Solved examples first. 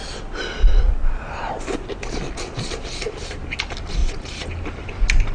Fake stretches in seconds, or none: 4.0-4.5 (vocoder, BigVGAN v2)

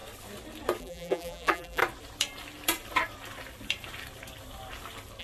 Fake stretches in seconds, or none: 0.8-1.8 (vocoder, BigVGAN v2)

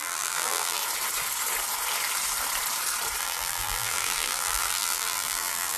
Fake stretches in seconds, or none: 0.0-0.8 (vocoder, BigVGAN v2); 3.2-5.8

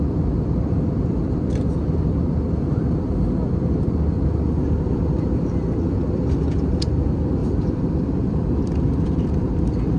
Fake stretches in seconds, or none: 0.0-10.0 (vocoder, BigVGAN v2)

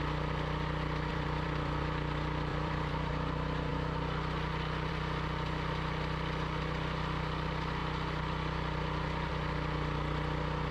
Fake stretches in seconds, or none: 1.1-1.8 (vocoder, BigVGAN v2); 2.5-3.1

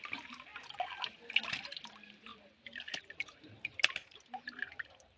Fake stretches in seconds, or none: 0.0-5.2 (vocoder, BigVGAN v2)